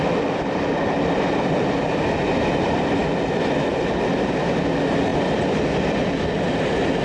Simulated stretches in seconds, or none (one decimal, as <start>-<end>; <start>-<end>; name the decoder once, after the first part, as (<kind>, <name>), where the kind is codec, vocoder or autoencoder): none